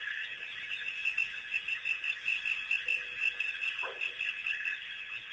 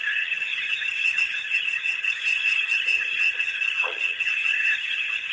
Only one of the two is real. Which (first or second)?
first